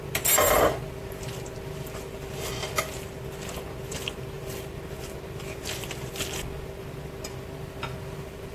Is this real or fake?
real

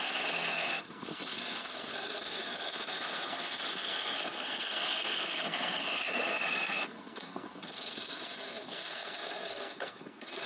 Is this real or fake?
fake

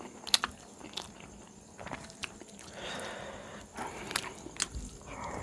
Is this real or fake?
real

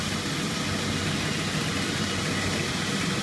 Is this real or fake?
real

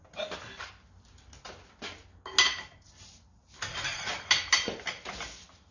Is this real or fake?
real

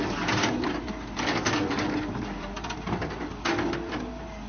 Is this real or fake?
real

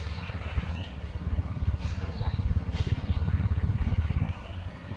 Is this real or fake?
fake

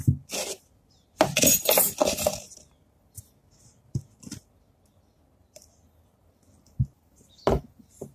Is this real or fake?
real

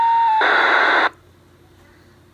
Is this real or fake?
real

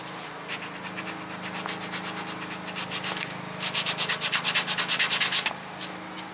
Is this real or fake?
real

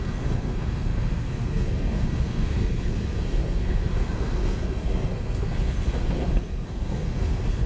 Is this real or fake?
fake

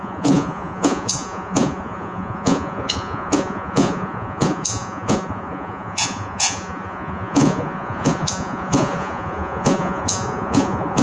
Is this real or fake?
fake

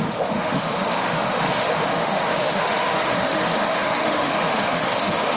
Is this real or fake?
fake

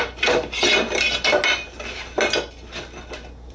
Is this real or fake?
real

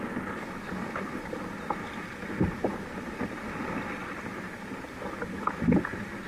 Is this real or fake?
real